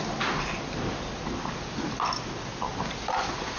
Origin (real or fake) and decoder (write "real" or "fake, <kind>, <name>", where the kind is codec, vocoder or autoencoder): real